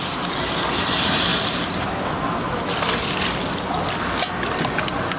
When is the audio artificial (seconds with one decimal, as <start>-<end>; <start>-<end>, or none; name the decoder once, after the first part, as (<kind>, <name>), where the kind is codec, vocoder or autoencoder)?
none